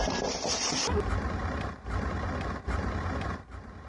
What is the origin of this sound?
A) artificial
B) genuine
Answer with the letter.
A